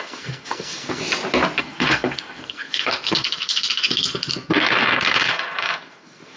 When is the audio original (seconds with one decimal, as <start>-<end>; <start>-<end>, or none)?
1.0-1.6